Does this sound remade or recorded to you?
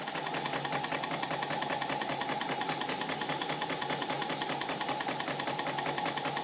recorded